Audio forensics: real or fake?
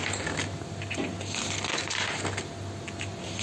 real